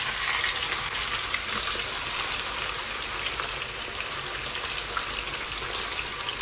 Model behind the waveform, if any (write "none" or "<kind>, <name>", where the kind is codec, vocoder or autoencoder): none